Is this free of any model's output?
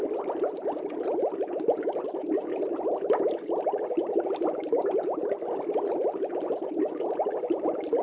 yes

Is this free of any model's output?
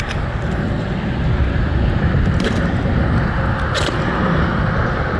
yes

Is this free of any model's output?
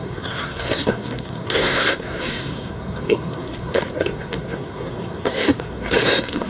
no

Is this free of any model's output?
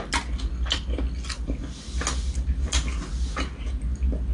yes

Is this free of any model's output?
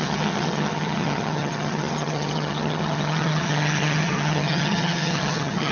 no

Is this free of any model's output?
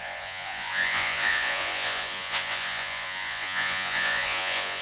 no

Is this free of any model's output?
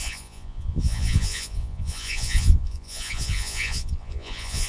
no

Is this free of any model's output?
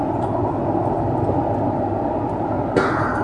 yes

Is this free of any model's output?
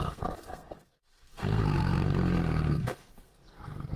no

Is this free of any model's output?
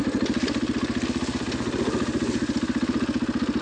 yes